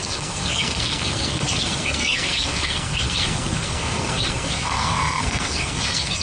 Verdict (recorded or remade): remade